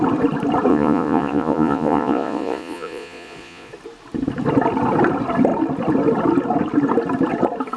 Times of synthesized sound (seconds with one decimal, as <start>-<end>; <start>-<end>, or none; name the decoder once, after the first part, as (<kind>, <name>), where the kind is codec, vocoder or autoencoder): 0.7-3.7 (vocoder, Vocos)